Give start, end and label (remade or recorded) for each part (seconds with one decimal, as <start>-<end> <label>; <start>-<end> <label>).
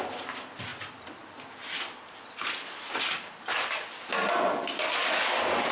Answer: 0.0-5.7 recorded